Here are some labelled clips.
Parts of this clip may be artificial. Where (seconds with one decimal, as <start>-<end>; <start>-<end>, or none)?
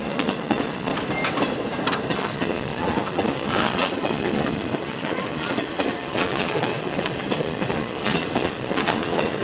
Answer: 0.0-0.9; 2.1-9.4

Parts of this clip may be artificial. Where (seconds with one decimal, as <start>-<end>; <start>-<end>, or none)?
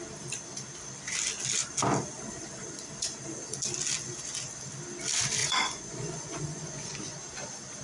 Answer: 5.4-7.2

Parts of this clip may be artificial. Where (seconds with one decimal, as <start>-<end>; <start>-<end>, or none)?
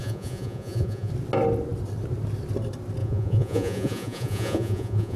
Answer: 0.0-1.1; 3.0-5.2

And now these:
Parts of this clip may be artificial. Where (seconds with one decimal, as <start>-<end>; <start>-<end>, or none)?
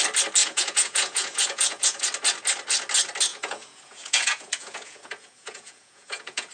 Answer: 0.4-2.0; 3.3-6.5